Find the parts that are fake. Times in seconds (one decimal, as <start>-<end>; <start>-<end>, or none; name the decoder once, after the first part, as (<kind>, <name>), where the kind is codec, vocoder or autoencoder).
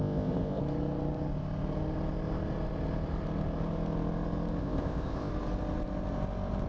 0.0-0.6 (codec, ZipCodec); 4.6-5.3